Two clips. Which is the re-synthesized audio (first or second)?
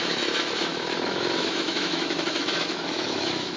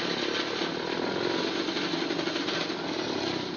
first